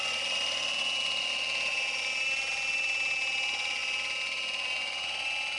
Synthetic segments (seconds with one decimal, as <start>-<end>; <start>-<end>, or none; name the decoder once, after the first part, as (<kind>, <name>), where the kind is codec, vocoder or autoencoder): none